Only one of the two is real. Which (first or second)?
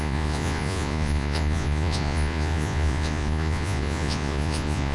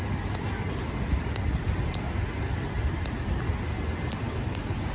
second